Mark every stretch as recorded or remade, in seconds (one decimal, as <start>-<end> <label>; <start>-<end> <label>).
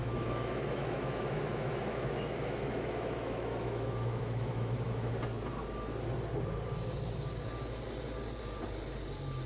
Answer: 0.0-5.1 remade; 5.1-9.5 recorded